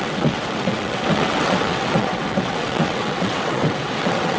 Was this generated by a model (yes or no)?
yes